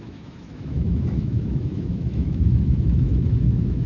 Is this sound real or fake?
fake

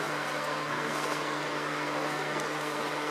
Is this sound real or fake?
fake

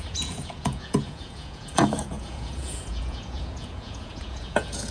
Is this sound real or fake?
fake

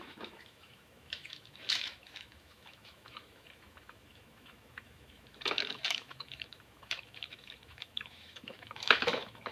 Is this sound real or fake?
fake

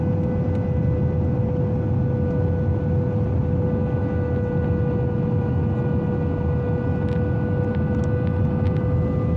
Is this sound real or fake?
real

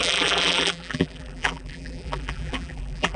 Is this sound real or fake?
fake